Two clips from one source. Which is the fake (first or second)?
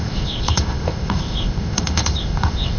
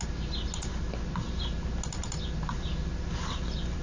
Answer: first